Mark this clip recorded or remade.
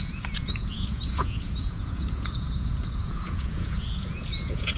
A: remade